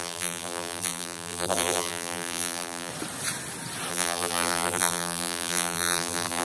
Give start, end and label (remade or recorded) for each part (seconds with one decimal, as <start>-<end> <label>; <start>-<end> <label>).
0.0-2.9 remade; 2.9-3.9 recorded; 3.9-6.4 remade